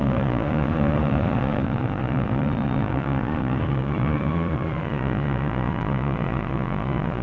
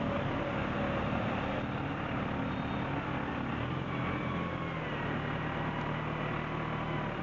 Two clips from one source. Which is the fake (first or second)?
first